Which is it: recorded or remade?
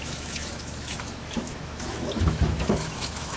remade